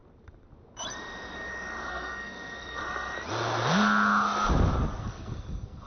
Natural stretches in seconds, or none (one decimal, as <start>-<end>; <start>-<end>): 0.0-1.9; 2.8-5.0